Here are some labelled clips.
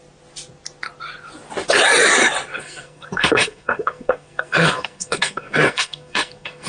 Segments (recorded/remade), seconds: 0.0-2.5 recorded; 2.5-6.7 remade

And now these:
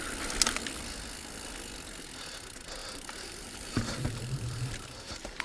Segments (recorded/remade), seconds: 0.0-2.8 recorded; 2.8-4.7 remade; 4.7-5.4 recorded

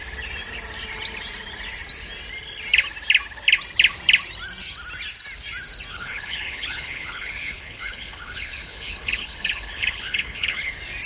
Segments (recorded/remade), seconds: 0.0-5.9 recorded; 5.9-10.7 remade; 10.7-11.1 recorded

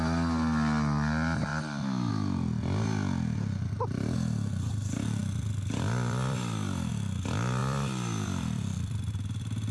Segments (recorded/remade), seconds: 0.0-1.5 recorded; 1.5-2.1 remade; 2.1-5.2 recorded; 5.2-6.9 remade; 6.9-7.6 recorded; 7.6-9.1 remade; 9.1-9.7 recorded

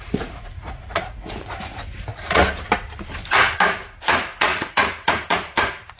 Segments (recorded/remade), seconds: 0.0-2.4 remade; 2.4-4.1 recorded; 4.1-6.0 remade